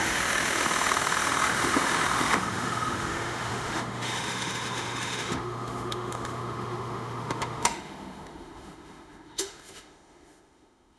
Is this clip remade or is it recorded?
remade